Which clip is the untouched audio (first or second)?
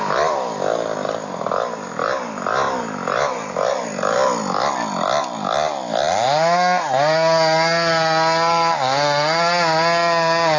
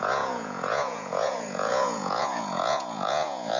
first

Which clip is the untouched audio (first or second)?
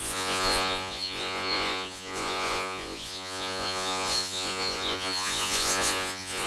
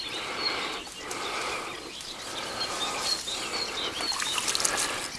second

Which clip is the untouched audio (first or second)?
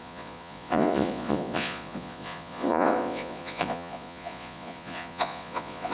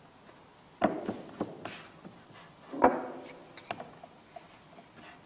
second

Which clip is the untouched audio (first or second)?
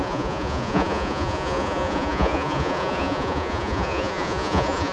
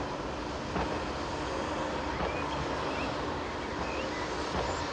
second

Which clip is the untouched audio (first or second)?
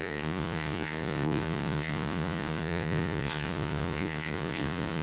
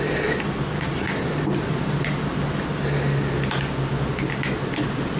second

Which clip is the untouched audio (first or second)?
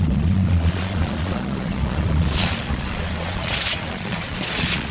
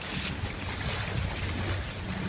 second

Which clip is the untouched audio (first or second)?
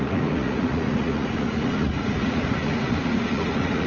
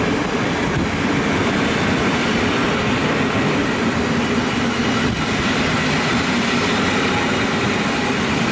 second